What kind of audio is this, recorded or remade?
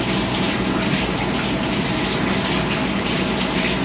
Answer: recorded